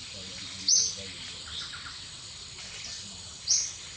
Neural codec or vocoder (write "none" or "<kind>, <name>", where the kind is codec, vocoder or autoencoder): none